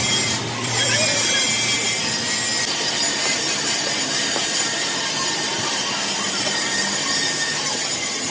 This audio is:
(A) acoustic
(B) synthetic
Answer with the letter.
B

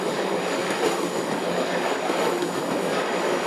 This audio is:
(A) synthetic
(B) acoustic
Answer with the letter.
A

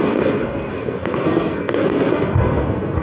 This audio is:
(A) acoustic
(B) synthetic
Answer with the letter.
B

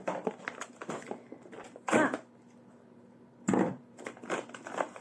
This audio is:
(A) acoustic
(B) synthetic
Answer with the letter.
A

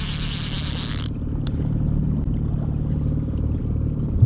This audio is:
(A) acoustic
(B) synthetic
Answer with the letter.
A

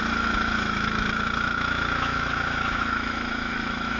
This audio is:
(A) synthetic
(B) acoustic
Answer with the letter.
A